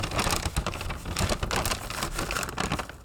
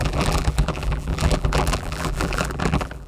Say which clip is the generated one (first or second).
second